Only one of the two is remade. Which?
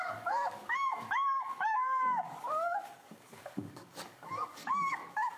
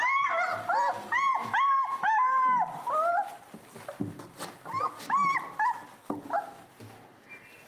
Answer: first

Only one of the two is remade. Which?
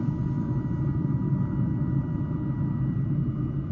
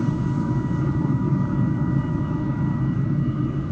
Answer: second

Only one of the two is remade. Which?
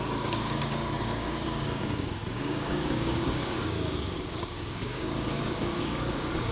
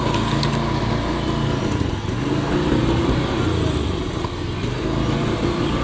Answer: first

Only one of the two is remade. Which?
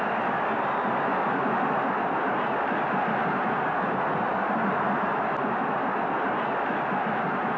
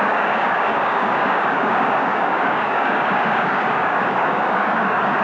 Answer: second